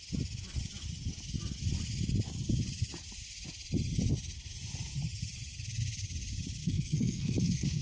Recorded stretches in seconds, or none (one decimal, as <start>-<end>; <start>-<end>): 0.0-6.6